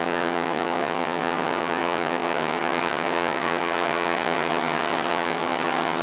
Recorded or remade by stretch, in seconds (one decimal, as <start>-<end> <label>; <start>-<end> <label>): 0.0-6.0 remade